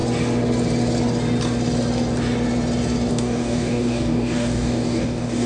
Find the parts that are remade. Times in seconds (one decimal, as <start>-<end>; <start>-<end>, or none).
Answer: 3.1-5.5

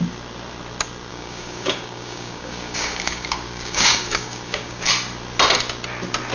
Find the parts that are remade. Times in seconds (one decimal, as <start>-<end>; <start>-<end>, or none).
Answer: 1.1-4.9

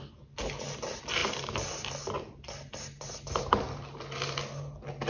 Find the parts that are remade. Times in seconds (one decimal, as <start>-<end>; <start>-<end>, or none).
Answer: none

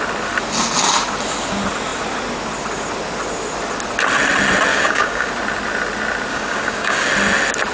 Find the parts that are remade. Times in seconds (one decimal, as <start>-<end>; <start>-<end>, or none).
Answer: 4.7-5.3; 6.3-7.1

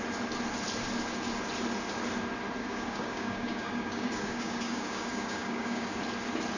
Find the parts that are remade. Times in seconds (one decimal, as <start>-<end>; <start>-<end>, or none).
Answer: 2.6-6.0

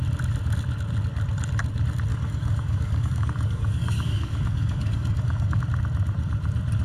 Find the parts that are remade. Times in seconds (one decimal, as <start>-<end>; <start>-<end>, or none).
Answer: 2.1-5.6

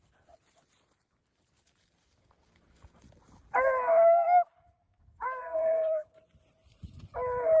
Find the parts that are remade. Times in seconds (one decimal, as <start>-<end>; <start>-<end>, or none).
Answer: 3.9-6.2